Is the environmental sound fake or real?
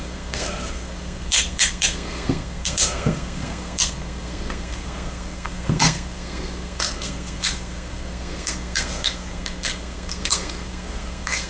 fake